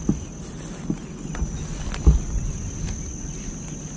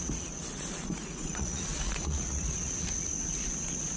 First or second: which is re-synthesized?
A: second